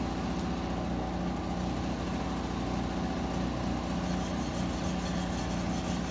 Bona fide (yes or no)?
yes